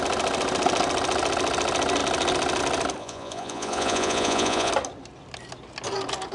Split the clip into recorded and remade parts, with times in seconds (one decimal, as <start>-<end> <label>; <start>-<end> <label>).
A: 0.0-3.0 recorded; 3.0-4.7 remade; 4.7-6.3 recorded